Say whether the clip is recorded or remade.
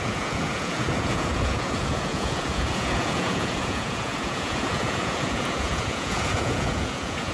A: remade